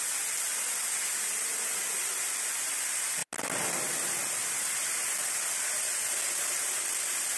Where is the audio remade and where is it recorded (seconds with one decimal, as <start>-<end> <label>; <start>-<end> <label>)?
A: 0.0-7.4 recorded